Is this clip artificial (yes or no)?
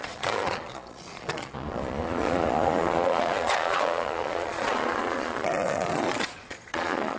yes